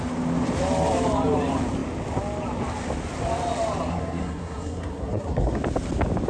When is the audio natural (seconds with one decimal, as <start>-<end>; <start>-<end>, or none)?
0.0-3.9; 5.6-6.3